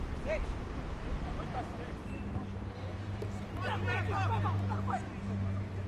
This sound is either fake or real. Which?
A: fake